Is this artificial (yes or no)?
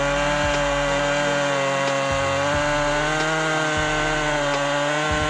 no